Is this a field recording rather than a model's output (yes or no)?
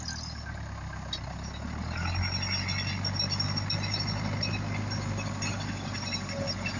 yes